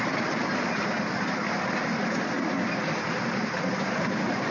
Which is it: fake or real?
real